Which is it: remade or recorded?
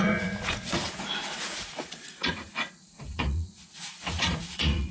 remade